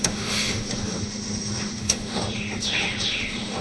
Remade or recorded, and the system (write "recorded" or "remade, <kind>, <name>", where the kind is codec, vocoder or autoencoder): remade, autoencoder, DAC-VAE